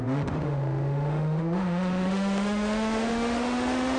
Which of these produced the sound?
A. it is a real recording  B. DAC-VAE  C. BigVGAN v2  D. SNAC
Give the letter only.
B